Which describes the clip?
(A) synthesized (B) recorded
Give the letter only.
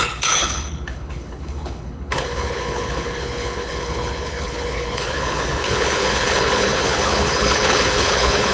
A